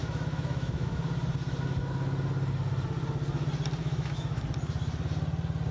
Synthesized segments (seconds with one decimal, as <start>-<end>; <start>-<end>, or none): 0.0-1.0; 3.8-4.4